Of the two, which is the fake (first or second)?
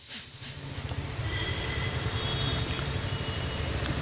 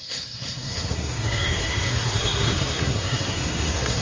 second